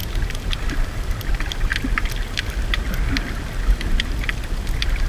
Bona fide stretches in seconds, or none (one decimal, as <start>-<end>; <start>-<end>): 0.0-5.1